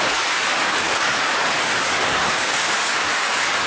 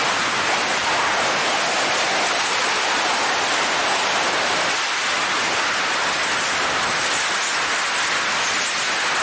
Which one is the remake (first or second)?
first